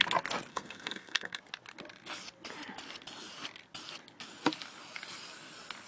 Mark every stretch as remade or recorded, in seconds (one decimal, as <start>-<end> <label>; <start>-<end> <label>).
0.0-0.5 recorded; 0.5-1.4 remade; 1.4-5.9 recorded